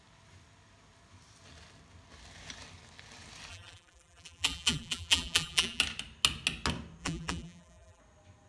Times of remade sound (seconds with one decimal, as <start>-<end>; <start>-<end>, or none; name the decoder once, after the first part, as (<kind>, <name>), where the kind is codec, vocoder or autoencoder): 3.5-5.8 (vocoder, BigVGAN v2); 7.0-8.0

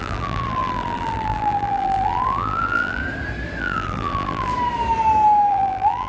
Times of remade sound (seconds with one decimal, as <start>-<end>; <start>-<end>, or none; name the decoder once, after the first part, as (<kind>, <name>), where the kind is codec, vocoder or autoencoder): 0.0-3.0 (vocoder, BigVGAN v2); 3.6-4.5; 5.5-6.1

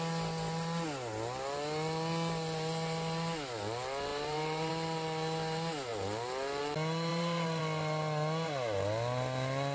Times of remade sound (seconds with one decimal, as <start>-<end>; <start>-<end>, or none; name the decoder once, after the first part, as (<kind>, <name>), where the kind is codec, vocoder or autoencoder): 4.1-4.7 (vocoder, BigVGAN v2); 7.1-7.6

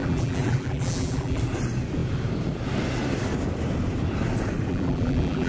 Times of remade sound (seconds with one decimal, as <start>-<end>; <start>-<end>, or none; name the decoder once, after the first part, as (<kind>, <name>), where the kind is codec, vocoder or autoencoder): 0.0-1.4 (vocoder, BigVGAN v2); 4.7-5.5

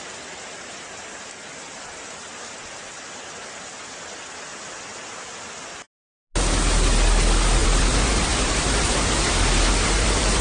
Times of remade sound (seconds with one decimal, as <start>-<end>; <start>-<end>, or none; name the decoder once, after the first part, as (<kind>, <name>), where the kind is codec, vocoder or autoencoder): 7.6-10.4 (vocoder, BigVGAN v2)

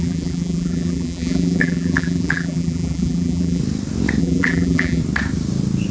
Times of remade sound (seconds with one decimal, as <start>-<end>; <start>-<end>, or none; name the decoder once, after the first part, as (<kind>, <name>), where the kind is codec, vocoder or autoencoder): 0.0-3.6 (vocoder, BigVGAN v2); 4.2-5.0

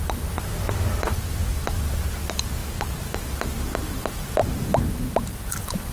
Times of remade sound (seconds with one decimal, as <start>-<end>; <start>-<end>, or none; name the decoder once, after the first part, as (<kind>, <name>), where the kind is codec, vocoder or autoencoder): 2.6-3.2 (vocoder, BigVGAN v2); 4.4-5.5